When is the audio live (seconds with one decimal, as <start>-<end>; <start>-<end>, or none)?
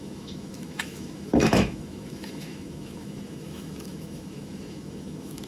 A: none